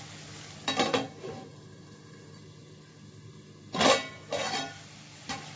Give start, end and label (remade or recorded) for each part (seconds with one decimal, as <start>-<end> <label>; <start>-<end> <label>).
0.0-5.6 recorded